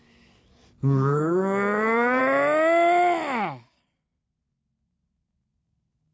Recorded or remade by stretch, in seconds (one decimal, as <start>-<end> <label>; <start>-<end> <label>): 0.0-0.8 recorded; 0.8-2.2 remade; 2.2-6.1 recorded